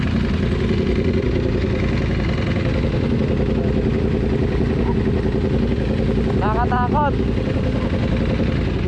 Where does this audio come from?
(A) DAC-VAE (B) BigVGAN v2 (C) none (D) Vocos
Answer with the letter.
C